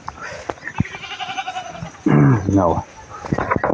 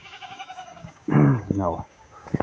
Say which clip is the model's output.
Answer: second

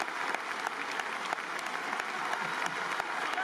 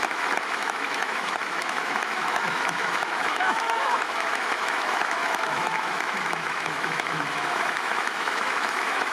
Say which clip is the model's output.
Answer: second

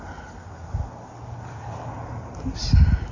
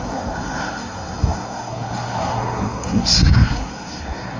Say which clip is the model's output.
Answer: second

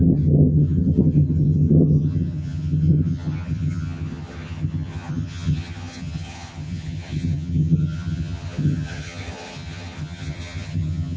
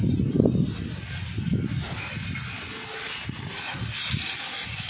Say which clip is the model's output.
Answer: first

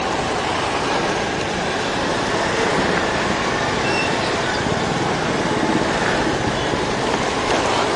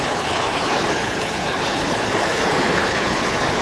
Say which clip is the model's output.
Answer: second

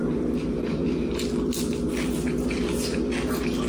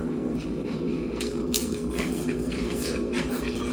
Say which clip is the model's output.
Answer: second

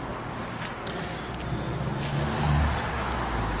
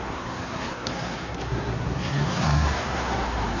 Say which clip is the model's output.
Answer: second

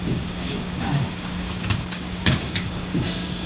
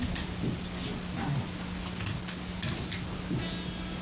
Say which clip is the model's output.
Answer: first